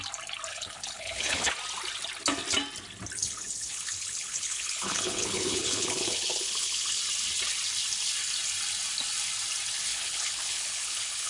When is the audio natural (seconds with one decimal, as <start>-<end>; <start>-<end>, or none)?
0.0-0.5; 1.5-3.2; 7.0-9.9